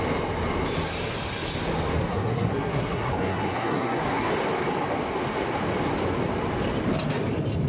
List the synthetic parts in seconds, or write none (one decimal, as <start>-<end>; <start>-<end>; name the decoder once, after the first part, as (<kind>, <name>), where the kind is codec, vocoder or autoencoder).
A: 2.1-4.3 (codec, SNAC)